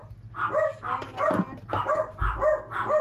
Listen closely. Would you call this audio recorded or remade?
recorded